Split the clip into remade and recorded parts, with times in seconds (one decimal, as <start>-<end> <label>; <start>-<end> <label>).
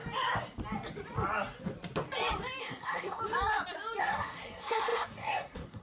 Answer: 0.0-2.6 recorded; 2.6-3.2 remade; 3.2-4.0 recorded; 4.0-5.8 remade